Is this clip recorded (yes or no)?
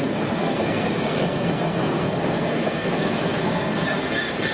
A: no